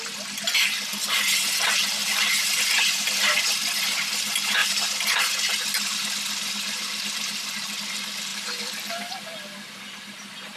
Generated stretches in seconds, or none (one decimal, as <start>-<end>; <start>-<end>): 2.0-2.5; 4.6-5.2